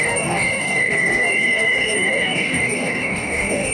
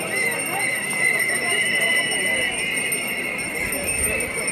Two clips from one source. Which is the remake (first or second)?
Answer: first